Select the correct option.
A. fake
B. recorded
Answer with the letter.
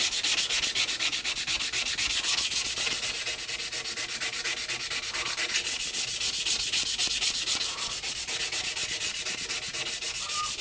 B